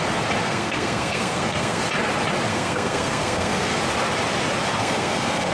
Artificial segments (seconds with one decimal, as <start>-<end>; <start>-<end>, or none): 0.4-1.8; 2.5-3.8; 4.8-5.5